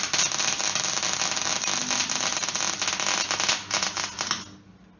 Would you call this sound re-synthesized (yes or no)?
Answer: no